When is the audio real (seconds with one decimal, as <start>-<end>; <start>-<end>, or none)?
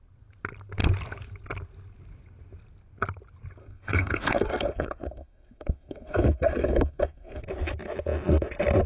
0.0-3.6; 7.4-8.9